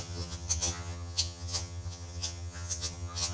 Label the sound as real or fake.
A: fake